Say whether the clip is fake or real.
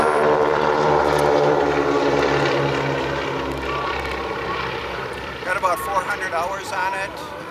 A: fake